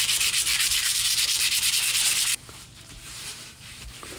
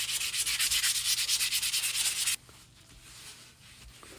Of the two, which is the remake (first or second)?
first